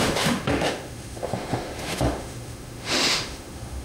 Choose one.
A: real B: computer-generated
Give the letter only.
B